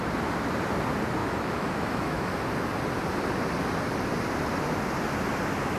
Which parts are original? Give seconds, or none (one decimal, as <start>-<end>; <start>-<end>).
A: 0.0-1.2; 2.3-5.8